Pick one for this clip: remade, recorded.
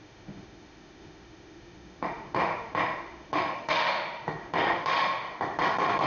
remade